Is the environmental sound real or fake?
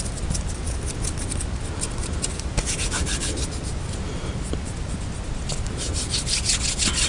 real